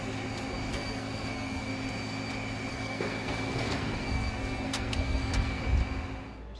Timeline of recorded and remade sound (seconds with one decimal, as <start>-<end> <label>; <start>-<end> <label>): 0.0-0.7 recorded; 0.7-1.7 remade; 1.7-2.7 recorded; 2.7-5.6 remade; 5.6-6.6 recorded